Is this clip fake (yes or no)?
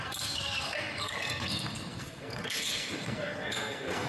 yes